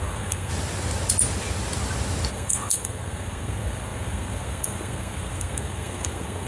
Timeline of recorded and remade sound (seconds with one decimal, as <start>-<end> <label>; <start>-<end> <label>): 0.0-0.5 remade; 0.5-2.3 recorded; 2.3-6.5 remade